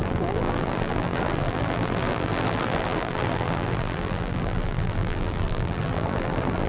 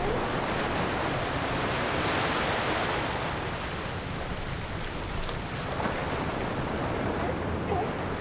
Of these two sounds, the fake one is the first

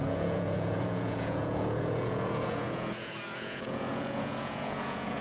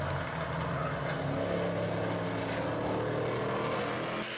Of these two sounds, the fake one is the first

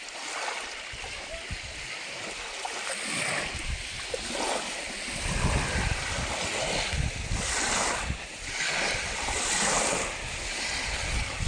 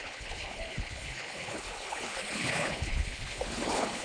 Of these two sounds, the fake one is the second